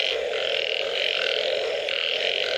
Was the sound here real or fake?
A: real